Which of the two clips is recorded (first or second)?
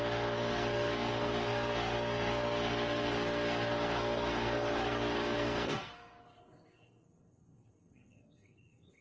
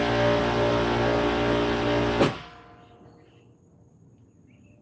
second